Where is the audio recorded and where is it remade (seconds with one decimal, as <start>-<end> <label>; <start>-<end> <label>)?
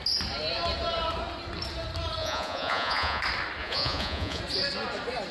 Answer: 0.0-2.2 recorded; 2.2-3.2 remade; 3.2-3.6 recorded; 3.6-4.4 remade; 4.4-5.3 recorded